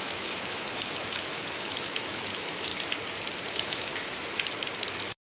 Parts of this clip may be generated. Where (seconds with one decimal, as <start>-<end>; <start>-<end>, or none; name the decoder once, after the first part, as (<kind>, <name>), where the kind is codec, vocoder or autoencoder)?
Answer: 0.0-2.7 (autoencoder, DAC-VAE); 3.5-3.9